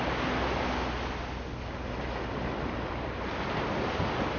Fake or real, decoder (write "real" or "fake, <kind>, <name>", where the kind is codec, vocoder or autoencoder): real